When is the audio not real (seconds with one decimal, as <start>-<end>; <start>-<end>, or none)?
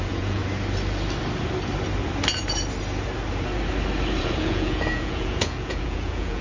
0.0-0.4; 4.2-6.4